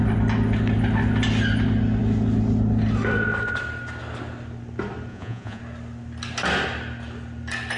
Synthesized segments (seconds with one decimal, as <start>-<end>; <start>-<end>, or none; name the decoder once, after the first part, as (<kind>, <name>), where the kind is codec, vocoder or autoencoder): 5.1-5.6 (vocoder, Vocos)